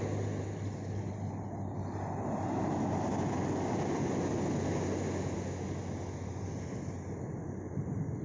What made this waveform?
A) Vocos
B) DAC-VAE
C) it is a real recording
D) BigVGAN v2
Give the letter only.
C